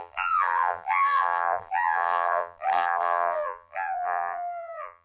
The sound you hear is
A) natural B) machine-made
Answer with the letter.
B